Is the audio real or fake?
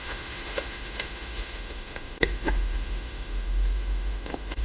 fake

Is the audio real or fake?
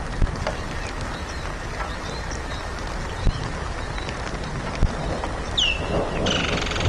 real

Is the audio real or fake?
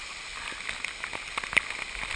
real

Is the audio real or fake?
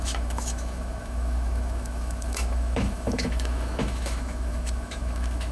fake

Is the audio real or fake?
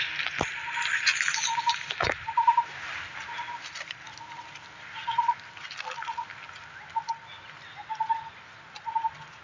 real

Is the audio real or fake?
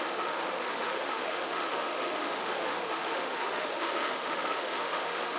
fake